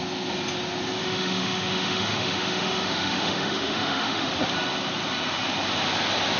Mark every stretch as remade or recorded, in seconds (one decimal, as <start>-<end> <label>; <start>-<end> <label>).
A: 0.0-1.0 recorded; 1.0-4.3 remade; 4.3-6.4 recorded